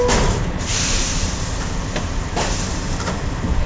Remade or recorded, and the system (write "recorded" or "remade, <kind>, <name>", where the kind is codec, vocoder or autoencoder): remade, vocoder, BigVGAN v2